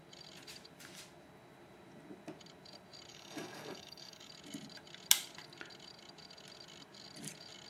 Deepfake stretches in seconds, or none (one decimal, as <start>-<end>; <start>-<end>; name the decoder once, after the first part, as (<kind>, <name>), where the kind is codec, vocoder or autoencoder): 3.1-4.3 (codec, DAC)

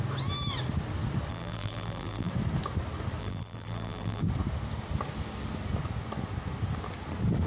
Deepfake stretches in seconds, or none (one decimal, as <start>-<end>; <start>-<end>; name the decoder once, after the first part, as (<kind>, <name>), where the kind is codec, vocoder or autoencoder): 1.3-2.3 (vocoder, BigVGAN v2); 3.2-4.2

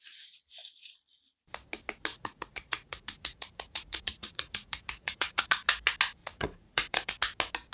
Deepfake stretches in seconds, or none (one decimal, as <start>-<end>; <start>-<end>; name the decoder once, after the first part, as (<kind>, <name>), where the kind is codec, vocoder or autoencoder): 2.1-5.4 (vocoder, Vocos); 6.2-7.1

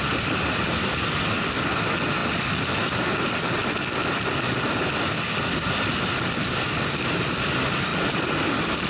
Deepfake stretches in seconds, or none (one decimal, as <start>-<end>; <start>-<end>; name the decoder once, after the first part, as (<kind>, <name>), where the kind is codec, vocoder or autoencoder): none

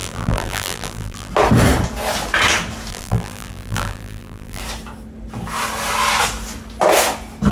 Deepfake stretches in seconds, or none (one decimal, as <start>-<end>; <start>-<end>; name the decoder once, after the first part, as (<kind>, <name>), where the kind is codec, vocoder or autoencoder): 0.0-1.3 (vocoder, BigVGAN v2); 2.9-4.6